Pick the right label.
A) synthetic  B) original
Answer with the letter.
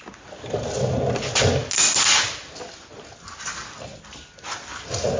B